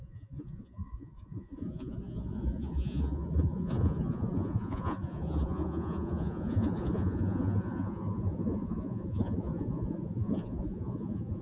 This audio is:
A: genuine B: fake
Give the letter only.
B